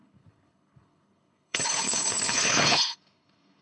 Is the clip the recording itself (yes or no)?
no